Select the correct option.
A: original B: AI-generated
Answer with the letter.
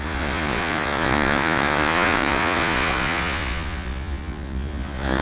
B